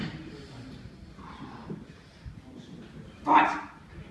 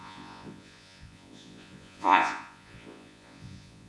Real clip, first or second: first